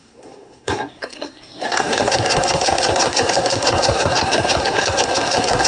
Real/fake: fake